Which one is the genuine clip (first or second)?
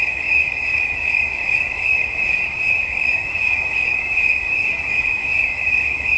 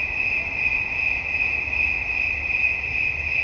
second